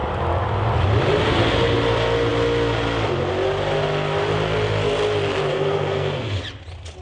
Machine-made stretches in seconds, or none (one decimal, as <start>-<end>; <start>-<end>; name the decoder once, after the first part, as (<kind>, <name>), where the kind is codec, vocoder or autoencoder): 5.5-6.4 (codec, SNAC)